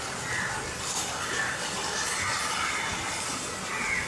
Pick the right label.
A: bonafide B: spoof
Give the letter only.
A